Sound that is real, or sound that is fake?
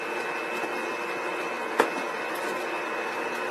real